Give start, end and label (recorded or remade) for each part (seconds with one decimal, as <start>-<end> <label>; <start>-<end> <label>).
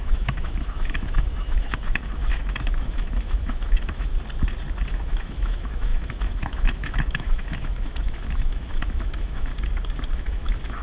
0.0-4.1 remade; 4.1-4.9 recorded; 4.9-9.5 remade; 9.5-10.1 recorded; 10.1-10.8 remade